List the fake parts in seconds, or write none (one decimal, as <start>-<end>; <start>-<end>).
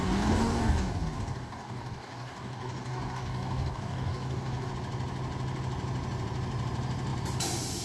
0.0-4.7